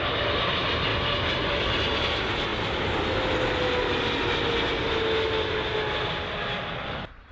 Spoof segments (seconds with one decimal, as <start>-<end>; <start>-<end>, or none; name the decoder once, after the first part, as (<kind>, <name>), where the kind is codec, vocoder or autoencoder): none